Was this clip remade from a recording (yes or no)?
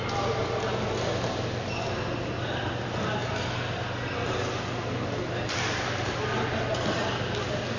no